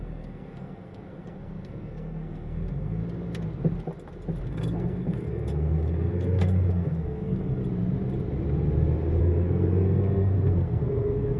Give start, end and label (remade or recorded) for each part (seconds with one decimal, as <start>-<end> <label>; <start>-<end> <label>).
0.0-3.0 remade; 3.0-4.4 recorded; 4.4-7.6 remade; 7.6-9.2 recorded; 9.2-11.4 remade